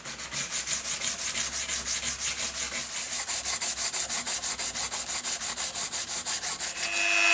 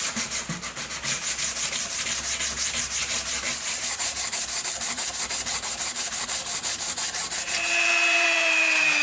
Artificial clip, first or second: second